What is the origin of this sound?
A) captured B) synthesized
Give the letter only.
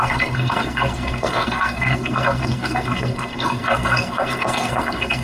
B